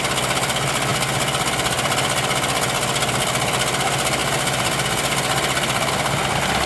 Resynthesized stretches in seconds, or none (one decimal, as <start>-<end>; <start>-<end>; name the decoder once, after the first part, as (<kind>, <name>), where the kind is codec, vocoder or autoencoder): none